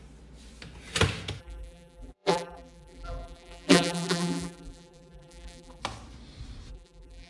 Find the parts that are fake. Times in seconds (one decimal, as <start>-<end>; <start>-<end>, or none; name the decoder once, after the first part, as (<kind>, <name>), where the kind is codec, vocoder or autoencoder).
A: 1.4-5.8 (vocoder, BigVGAN v2); 6.7-7.3